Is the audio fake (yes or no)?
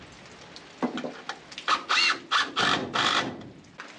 no